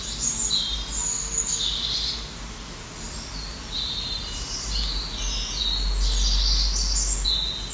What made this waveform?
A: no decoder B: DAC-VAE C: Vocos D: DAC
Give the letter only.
A